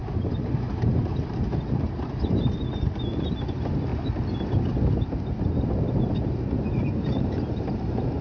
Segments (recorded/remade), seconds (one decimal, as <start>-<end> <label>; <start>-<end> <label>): 0.0-3.9 remade; 3.9-5.7 recorded; 5.7-8.2 remade

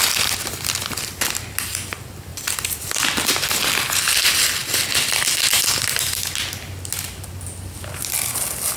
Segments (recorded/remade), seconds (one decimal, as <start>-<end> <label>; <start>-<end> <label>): 0.0-2.3 recorded; 2.3-3.3 remade; 3.3-8.8 recorded

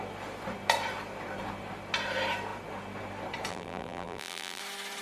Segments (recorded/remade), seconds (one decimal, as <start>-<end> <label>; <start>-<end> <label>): 0.0-3.5 recorded; 3.5-4.6 remade; 4.6-5.0 recorded

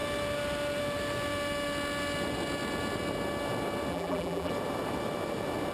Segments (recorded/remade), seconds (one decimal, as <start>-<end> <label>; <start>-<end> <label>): 0.0-3.9 recorded; 3.9-4.5 remade; 4.5-5.7 recorded

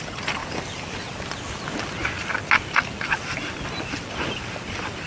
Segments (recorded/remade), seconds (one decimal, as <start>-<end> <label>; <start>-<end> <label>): 0.0-5.1 recorded

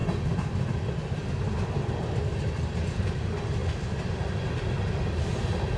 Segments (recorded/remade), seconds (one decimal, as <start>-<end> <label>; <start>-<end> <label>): 0.0-5.8 recorded

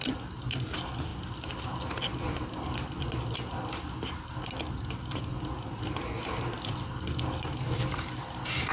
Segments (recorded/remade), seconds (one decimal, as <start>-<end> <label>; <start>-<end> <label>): 0.0-8.7 recorded

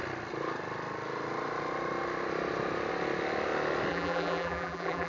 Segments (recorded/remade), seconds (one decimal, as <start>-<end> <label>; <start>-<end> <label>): 0.0-3.9 recorded; 3.9-5.1 remade